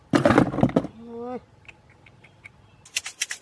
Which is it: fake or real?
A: real